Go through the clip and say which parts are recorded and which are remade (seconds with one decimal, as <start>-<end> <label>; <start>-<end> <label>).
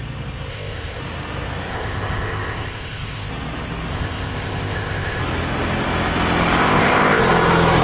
0.0-0.5 recorded; 0.5-1.0 remade; 1.0-1.7 recorded; 1.7-3.3 remade; 3.3-3.9 recorded; 3.9-5.2 remade; 5.2-6.6 recorded; 6.6-7.2 remade; 7.2-7.8 recorded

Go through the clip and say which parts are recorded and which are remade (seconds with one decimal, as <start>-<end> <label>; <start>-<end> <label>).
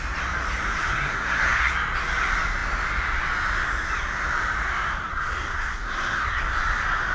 0.0-0.8 recorded; 0.8-1.7 remade; 1.7-5.1 recorded; 5.1-6.4 remade; 6.4-7.1 recorded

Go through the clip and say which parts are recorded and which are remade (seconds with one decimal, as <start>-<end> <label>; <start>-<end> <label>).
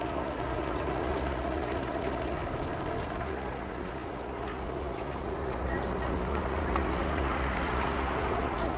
0.0-2.4 remade; 2.4-3.0 recorded; 3.0-8.8 remade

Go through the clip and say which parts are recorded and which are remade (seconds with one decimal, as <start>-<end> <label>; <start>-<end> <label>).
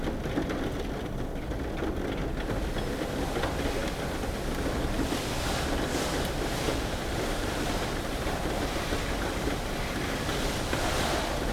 0.0-6.7 recorded; 6.7-9.5 remade; 9.5-11.5 recorded